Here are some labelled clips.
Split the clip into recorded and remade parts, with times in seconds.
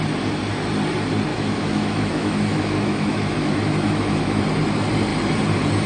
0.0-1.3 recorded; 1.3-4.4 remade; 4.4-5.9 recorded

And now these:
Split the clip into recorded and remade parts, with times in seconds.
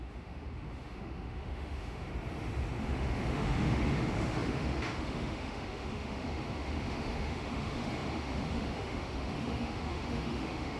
0.0-2.1 remade; 2.1-2.8 recorded; 2.8-10.8 remade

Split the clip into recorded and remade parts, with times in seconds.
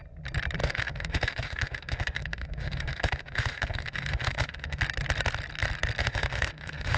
0.0-0.6 recorded; 0.6-4.8 remade; 4.8-6.0 recorded; 6.0-7.0 remade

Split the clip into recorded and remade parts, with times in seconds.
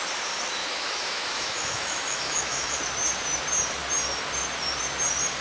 0.0-0.6 recorded; 0.6-2.8 remade; 2.8-5.4 recorded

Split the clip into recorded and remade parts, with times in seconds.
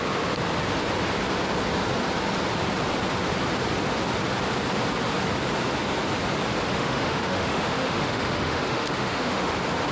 0.0-6.7 recorded; 6.7-9.5 remade; 9.5-9.9 recorded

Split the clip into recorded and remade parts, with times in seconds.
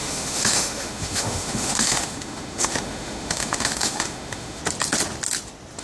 0.0-4.6 remade; 4.6-5.8 recorded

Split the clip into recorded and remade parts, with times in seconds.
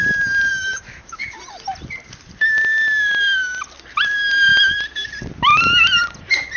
0.0-0.5 recorded; 0.5-1.4 remade; 1.4-6.6 recorded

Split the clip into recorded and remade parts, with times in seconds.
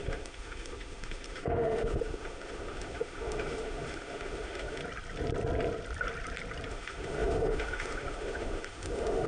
0.0-4.8 remade; 4.8-6.7 recorded; 6.7-9.3 remade